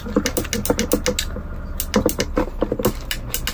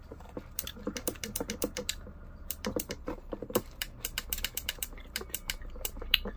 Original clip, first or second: first